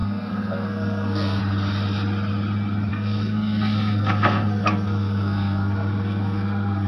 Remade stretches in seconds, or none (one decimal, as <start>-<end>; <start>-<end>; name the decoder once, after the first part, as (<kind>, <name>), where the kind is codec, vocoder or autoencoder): 0.0-1.4 (codec, SNAC); 2.9-6.9